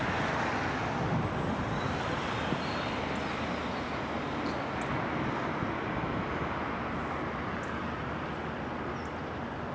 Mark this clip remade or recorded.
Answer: recorded